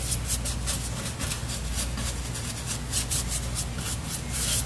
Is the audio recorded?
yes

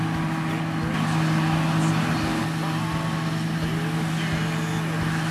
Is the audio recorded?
yes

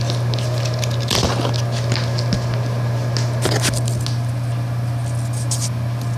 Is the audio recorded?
yes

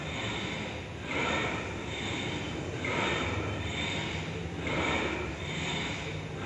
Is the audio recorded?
yes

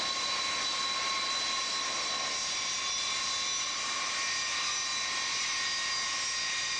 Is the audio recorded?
yes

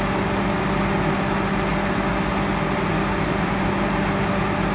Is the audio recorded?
yes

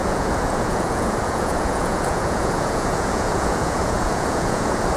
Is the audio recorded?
no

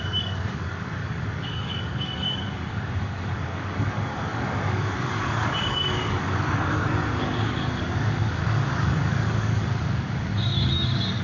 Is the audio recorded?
no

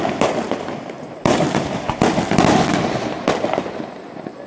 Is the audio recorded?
yes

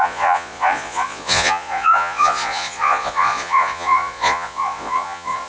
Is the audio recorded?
no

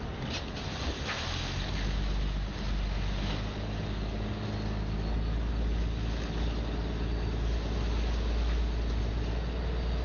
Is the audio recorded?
yes